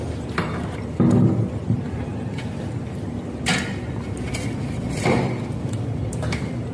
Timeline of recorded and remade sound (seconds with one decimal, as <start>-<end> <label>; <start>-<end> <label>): 0.0-6.7 remade